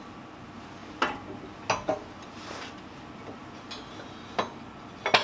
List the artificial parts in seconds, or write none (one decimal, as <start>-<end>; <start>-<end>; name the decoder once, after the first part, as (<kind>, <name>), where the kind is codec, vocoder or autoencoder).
none